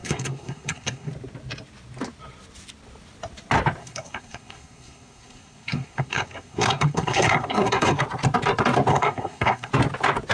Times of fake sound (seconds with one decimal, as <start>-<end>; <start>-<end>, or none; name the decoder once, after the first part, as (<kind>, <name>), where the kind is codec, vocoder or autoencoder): 0.0-1.1 (codec, SNAC); 3.8-8.0; 8.9-9.7